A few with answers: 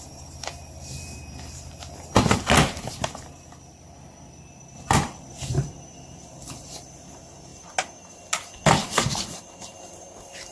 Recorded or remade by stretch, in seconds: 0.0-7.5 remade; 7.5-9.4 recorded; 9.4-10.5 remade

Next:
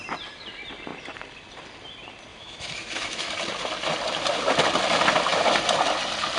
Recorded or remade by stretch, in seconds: 0.0-2.3 recorded; 2.3-3.3 remade; 3.3-6.4 recorded

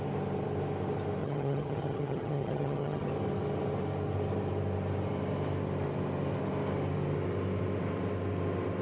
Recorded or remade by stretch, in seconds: 0.0-1.2 recorded; 1.2-3.1 remade; 3.1-8.8 recorded

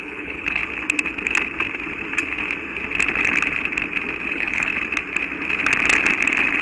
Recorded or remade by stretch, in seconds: 0.0-0.6 remade; 0.6-4.3 recorded; 4.3-4.7 remade; 4.7-6.6 recorded

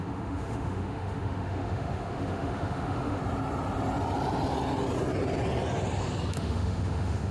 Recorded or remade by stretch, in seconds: 0.0-3.2 remade; 3.2-6.3 recorded; 6.3-7.3 remade

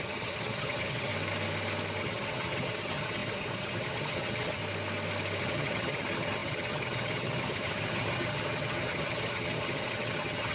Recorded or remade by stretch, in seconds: 0.0-1.1 remade; 1.1-2.0 recorded; 2.0-4.6 remade; 4.6-5.4 recorded; 5.4-10.5 remade

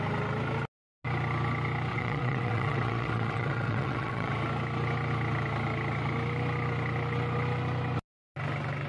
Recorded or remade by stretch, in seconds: 0.0-1.9 recorded; 1.9-4.3 remade; 4.3-8.9 recorded